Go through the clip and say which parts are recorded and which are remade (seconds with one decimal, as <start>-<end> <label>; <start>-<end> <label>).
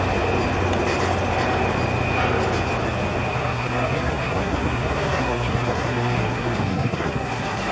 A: 0.0-3.3 recorded; 3.3-7.7 remade